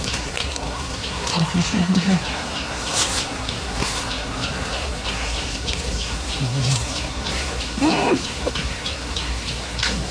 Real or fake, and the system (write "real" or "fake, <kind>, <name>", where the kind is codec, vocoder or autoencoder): fake, codec, SNAC